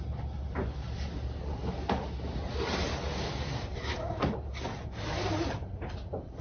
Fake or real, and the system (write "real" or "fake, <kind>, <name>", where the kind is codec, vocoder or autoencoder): real